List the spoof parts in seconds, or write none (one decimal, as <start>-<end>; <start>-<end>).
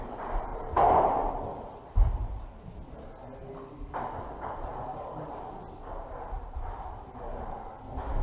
0.5-1.3; 2.2-2.7; 4.7-7.7